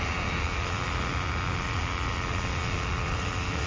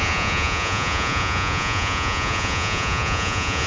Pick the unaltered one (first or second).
first